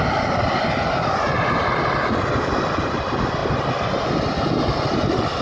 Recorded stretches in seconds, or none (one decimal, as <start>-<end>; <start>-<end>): 0.0-5.4